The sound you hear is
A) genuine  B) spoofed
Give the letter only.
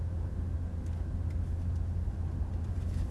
A